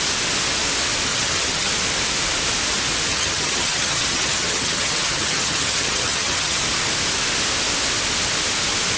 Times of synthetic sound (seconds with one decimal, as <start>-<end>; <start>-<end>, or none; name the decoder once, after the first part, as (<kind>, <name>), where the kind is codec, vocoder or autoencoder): 1.1-1.7 (vocoder, HiFi-GAN); 3.1-6.6